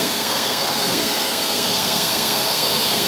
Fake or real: fake